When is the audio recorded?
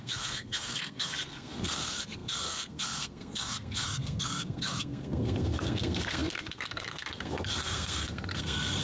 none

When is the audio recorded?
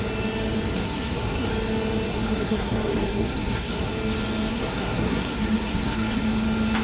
0.0-0.7; 1.5-2.1; 3.9-4.5; 6.2-6.8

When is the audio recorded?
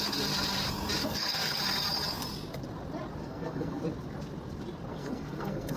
0.0-1.0; 1.6-3.2; 3.8-4.9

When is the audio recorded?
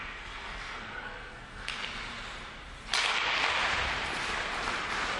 1.8-5.2